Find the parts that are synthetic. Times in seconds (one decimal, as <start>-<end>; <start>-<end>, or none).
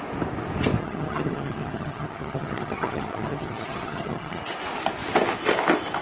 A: 0.8-4.4